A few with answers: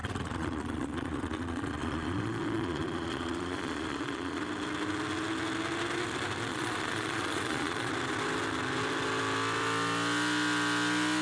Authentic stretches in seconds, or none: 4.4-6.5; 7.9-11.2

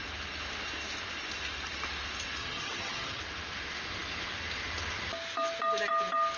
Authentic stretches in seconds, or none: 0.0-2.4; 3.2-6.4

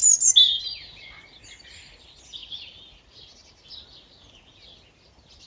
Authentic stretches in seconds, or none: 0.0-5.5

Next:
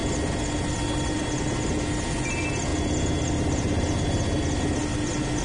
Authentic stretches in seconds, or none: 0.0-5.4